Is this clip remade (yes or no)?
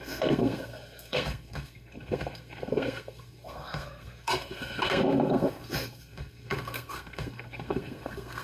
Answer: yes